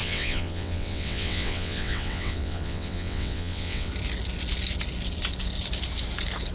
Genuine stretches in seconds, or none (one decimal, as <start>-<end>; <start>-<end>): 3.9-6.5